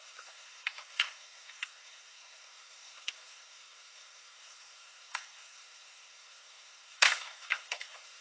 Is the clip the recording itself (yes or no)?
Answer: no